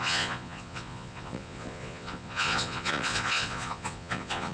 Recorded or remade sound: remade